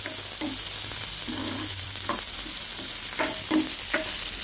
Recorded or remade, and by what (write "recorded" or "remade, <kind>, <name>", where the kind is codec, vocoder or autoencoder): recorded